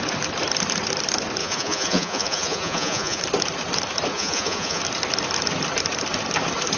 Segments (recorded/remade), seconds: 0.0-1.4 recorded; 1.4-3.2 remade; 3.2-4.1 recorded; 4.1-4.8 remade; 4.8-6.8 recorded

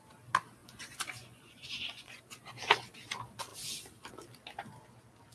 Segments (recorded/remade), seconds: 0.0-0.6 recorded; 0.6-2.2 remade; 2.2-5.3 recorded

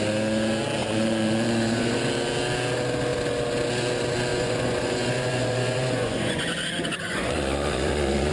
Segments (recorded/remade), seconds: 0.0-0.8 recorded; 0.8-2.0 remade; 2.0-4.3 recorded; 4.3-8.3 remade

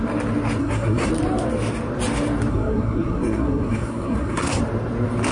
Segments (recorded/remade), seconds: 0.0-0.6 recorded; 0.6-1.1 remade; 1.1-2.5 recorded; 2.5-4.6 remade; 4.6-5.3 recorded

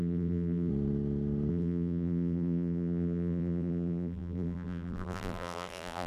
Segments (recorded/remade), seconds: 0.0-0.7 remade; 0.7-1.5 recorded; 1.5-6.1 remade

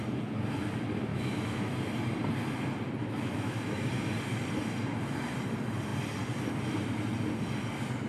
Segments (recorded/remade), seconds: 0.0-1.1 recorded; 1.1-1.7 remade; 1.7-3.0 recorded; 3.0-3.9 remade; 3.9-8.1 recorded

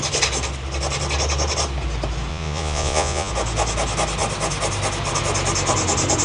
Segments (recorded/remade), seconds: 0.0-2.3 recorded; 2.3-3.3 remade; 3.3-6.2 recorded